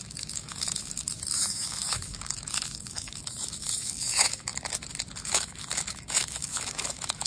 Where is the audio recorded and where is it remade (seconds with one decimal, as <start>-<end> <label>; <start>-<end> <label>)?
0.0-4.5 remade; 4.5-5.2 recorded; 5.2-7.3 remade